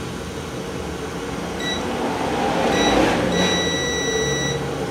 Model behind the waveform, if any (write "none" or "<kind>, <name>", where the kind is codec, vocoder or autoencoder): none